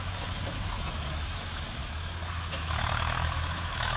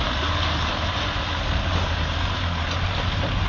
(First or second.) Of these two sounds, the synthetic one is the first